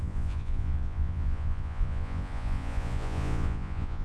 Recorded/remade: remade